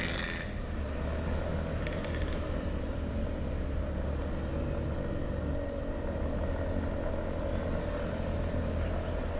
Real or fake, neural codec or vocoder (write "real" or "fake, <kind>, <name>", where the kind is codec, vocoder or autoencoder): real